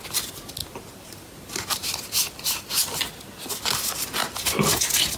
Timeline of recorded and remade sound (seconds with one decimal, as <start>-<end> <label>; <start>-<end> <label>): 0.0-0.6 recorded; 0.6-2.6 remade; 2.6-4.2 recorded; 4.2-4.7 remade; 4.7-5.2 recorded